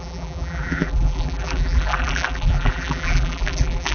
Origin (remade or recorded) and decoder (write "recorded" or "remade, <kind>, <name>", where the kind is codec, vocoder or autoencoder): remade, vocoder, BigVGAN v2